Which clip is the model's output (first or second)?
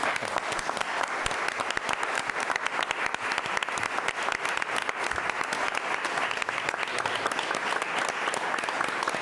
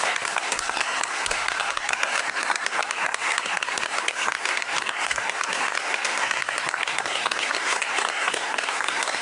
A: second